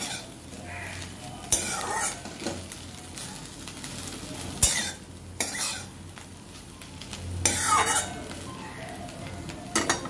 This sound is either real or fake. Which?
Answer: real